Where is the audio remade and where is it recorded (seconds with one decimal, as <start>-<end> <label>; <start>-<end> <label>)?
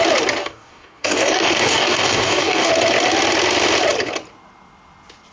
0.0-0.4 recorded; 0.4-2.7 remade; 2.7-5.3 recorded